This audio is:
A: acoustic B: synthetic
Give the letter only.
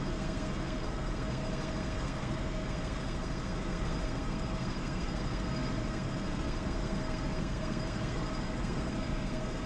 B